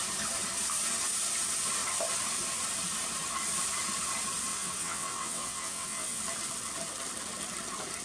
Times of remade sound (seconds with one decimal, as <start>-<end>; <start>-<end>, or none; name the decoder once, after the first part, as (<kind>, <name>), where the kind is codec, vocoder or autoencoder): 4.5-6.2 (vocoder, WaveNeXt)